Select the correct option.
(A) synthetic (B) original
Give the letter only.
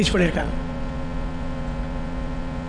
A